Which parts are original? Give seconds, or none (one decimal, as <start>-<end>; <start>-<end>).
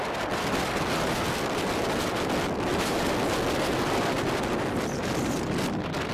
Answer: 0.0-6.1